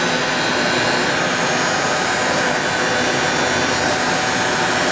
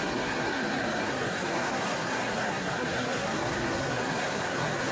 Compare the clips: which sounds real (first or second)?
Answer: first